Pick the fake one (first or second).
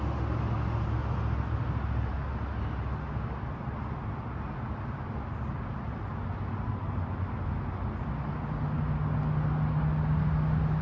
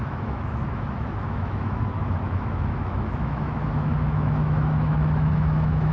second